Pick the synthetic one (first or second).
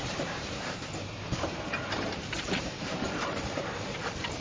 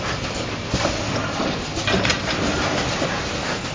first